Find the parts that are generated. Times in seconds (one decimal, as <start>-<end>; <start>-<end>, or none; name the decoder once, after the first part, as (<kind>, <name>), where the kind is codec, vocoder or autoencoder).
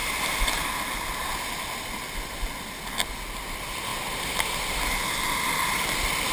0.0-0.7 (vocoder, BigVGAN v2); 3.9-4.7